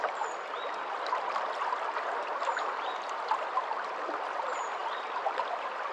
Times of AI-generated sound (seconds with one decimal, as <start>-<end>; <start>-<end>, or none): none